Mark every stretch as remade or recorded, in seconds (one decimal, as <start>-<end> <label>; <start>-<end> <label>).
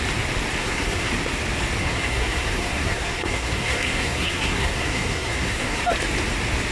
0.0-0.6 recorded; 0.6-1.1 remade; 1.1-1.8 recorded; 1.8-5.8 remade; 5.8-6.7 recorded